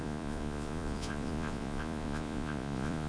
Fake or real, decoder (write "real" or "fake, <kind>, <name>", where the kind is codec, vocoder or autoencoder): fake, vocoder, Vocos